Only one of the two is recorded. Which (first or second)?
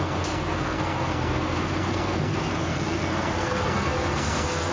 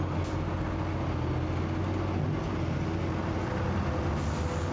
second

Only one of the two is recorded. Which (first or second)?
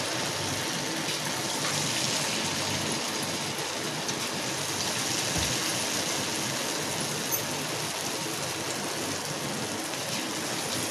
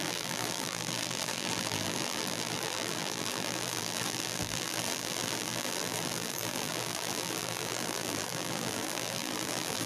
first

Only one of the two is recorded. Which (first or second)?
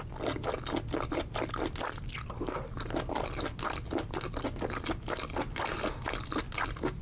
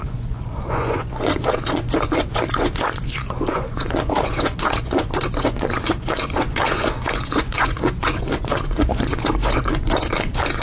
first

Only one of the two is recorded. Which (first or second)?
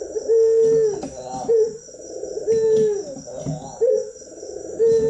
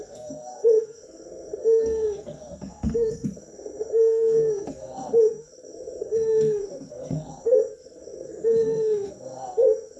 first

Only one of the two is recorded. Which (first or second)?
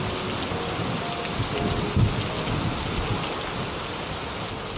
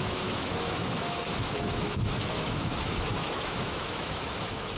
first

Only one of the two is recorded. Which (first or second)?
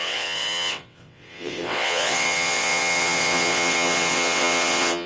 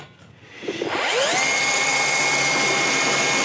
second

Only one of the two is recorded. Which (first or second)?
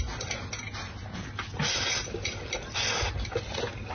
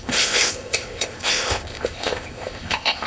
first